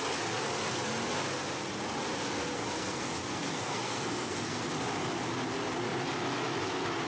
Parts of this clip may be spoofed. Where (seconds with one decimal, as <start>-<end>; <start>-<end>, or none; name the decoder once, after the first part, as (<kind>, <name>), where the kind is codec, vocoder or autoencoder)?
2.5-4.7 (codec, SNAC)